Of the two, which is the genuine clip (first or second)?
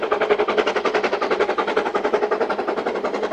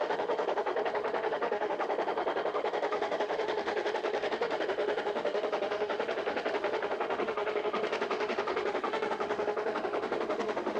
first